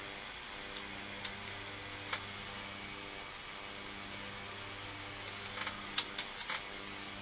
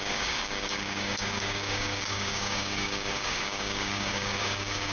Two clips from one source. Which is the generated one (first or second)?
second